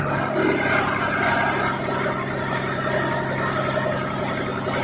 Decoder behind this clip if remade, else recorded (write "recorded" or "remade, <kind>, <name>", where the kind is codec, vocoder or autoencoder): recorded